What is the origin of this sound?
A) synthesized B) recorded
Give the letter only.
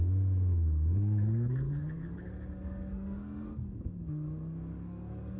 A